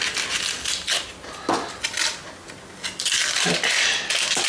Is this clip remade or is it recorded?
recorded